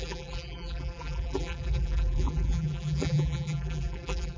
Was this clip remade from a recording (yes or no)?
yes